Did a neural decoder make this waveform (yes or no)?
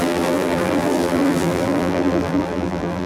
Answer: yes